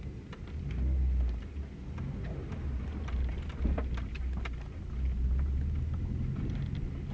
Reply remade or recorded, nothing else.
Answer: recorded